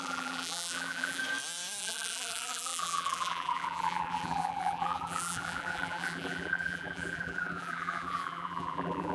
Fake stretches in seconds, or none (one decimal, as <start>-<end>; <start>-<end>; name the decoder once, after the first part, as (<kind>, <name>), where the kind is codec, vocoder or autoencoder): 0.0-1.2 (vocoder, BigVGAN v2); 1.8-9.1